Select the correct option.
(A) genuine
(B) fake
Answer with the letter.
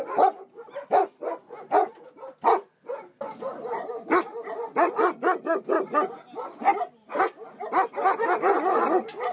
A